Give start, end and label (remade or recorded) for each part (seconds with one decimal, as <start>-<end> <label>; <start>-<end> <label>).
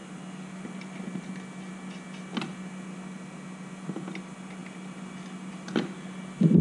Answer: 0.0-6.6 recorded